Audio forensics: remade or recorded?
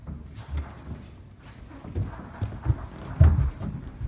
recorded